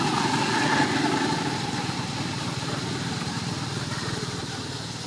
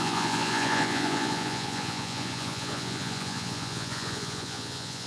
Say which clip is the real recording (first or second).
first